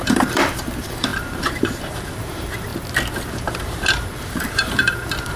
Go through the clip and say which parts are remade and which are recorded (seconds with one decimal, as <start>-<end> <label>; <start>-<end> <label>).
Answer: 0.0-2.7 remade; 2.7-3.3 recorded; 3.3-5.4 remade